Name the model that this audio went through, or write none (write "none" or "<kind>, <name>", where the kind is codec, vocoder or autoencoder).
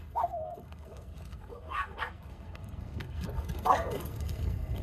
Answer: codec, SNAC